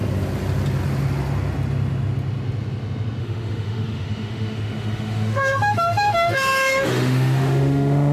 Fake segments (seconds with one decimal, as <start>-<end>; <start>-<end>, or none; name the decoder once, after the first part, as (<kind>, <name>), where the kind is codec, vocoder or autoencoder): 3.2-8.1 (autoencoder, DAC-VAE)